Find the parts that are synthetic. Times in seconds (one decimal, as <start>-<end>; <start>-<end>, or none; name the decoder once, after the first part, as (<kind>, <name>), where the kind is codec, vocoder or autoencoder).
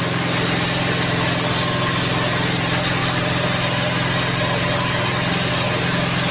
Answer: none